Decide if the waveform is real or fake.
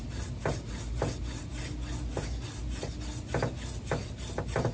real